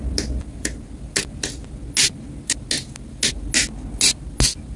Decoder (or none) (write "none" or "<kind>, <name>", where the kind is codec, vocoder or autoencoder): none